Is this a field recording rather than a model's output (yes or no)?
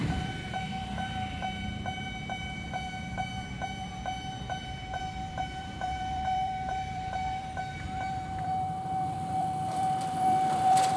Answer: no